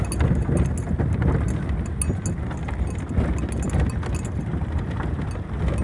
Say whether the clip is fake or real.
real